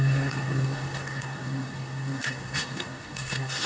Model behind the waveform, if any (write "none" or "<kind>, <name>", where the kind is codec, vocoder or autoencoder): codec, SNAC